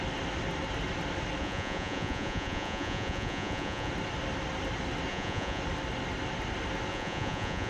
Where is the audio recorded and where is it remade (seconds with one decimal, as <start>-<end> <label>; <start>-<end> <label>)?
0.0-1.4 recorded; 1.4-3.9 remade; 3.9-5.1 recorded; 5.1-5.6 remade; 5.6-6.9 recorded; 6.9-7.7 remade